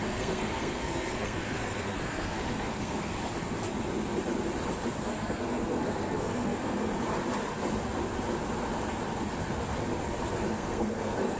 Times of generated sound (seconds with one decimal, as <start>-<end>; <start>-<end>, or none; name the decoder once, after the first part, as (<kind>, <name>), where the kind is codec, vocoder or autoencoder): 0.0-3.1 (codec, SNAC); 5.0-6.8; 10.5-11.4